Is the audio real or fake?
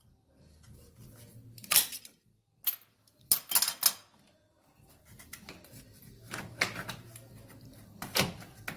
real